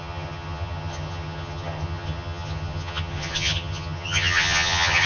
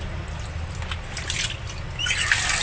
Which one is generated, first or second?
first